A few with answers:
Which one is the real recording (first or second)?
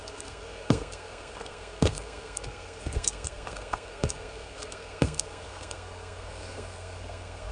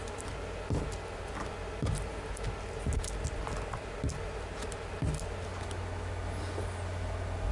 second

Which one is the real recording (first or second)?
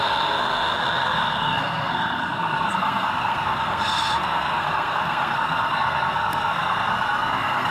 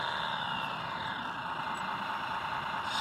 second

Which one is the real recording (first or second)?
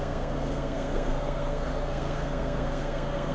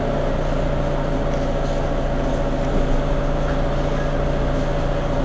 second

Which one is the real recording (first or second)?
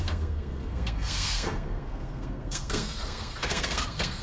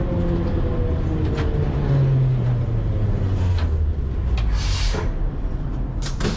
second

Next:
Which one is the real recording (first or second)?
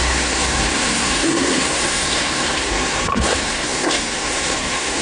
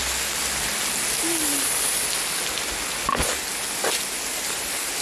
second